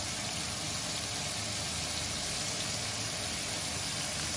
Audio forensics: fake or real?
real